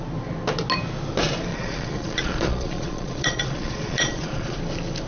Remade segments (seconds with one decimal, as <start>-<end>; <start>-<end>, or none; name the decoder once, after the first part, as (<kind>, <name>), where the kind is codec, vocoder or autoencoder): 1.5-4.6 (vocoder, Vocos)